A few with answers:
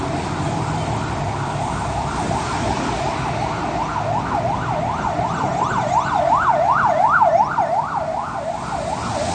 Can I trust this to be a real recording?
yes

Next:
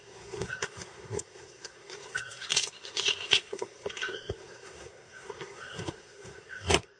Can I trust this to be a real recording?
no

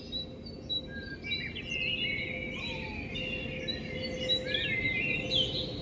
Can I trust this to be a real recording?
yes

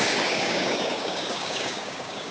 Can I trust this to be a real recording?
no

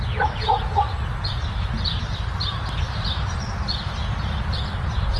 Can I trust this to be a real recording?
yes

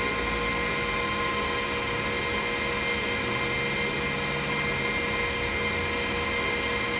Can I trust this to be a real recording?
yes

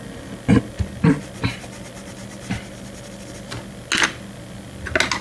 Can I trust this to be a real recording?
yes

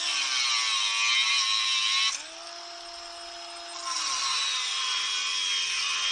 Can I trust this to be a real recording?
yes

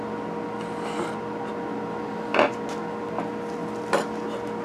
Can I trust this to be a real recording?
yes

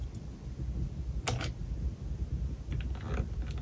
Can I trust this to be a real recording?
yes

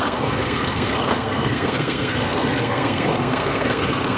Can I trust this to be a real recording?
no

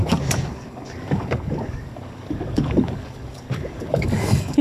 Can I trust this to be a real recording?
no